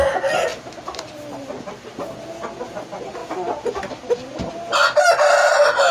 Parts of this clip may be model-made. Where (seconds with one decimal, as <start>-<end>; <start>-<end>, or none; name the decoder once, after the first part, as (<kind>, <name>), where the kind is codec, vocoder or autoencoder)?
none